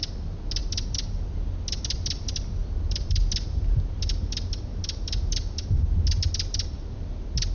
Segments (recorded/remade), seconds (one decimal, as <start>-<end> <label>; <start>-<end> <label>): 0.0-7.5 recorded